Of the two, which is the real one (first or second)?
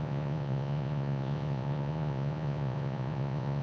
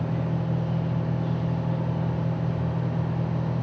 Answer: second